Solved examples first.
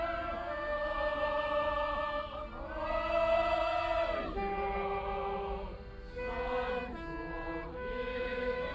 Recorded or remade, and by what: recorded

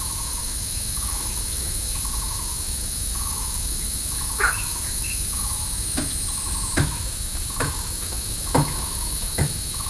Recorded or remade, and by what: remade, autoencoder, DAC-VAE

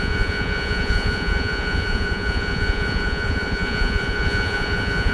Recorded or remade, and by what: remade, vocoder, Vocos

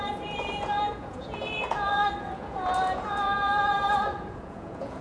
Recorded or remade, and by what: remade, vocoder, Vocos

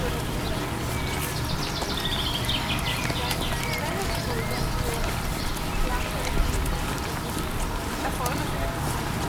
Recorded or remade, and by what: recorded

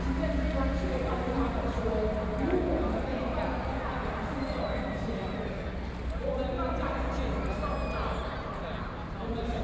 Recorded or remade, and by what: recorded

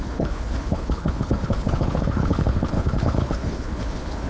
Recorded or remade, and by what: remade, codec, HILCodec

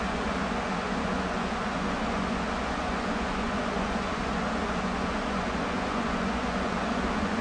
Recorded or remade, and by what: remade, vocoder, Vocos